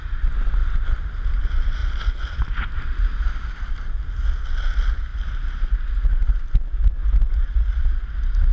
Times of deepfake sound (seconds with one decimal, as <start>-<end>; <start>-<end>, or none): none